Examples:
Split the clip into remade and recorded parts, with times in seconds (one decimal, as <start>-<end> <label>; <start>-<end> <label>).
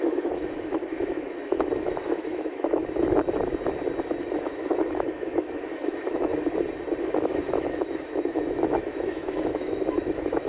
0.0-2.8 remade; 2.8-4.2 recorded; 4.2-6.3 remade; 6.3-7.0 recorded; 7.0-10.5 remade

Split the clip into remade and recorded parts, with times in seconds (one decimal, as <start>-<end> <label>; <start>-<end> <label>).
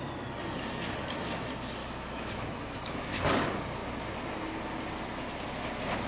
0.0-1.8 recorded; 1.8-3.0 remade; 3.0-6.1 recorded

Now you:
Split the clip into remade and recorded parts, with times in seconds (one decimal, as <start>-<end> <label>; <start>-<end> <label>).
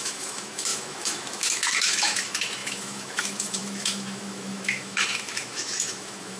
0.0-6.4 remade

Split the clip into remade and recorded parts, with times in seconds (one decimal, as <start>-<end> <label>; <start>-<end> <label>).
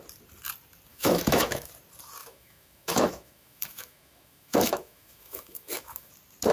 0.0-0.9 recorded; 0.9-1.7 remade; 1.7-2.2 recorded; 2.2-6.1 remade; 6.1-6.5 recorded